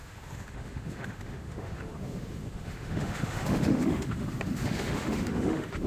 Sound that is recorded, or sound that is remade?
remade